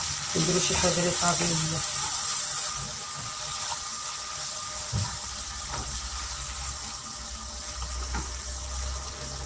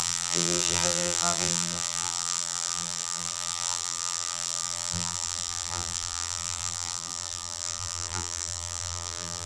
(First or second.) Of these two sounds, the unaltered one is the first